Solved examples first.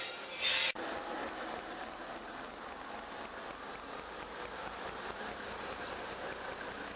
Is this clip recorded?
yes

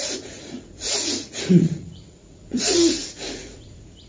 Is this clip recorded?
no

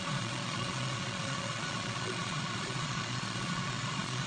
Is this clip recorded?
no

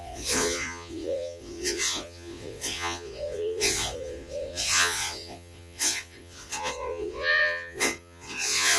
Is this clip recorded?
no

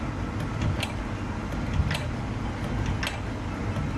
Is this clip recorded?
yes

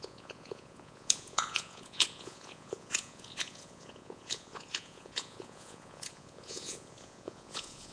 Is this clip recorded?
no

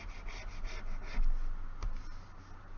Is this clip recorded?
yes